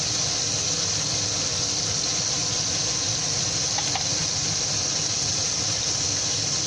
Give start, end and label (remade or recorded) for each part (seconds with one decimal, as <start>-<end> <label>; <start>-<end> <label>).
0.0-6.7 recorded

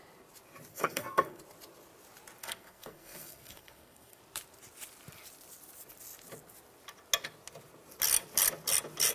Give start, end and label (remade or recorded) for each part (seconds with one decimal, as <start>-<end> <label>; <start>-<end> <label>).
0.0-0.7 recorded; 0.7-1.4 remade; 1.4-2.4 recorded; 2.4-4.2 remade; 4.2-9.1 recorded

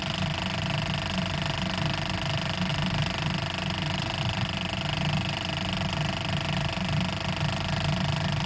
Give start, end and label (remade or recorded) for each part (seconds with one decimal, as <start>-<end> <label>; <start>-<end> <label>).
0.0-8.5 recorded